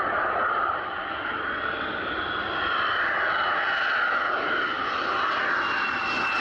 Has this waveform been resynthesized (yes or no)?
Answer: no